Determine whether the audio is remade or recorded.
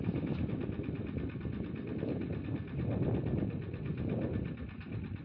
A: remade